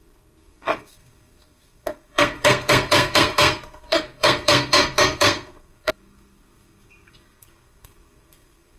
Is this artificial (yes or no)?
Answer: yes